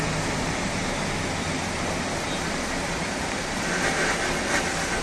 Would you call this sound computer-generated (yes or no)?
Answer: no